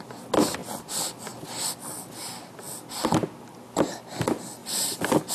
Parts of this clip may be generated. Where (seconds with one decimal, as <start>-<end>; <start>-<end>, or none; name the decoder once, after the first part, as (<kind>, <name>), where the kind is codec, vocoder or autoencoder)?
none